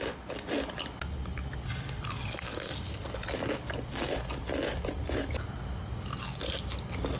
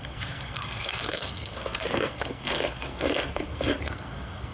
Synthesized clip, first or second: second